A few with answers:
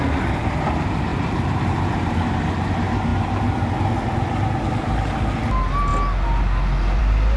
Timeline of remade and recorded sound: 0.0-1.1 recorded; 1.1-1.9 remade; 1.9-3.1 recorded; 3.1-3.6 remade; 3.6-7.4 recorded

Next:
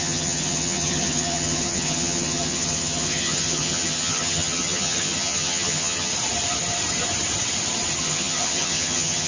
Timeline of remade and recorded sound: 0.0-6.1 remade; 6.1-8.0 recorded; 8.0-9.3 remade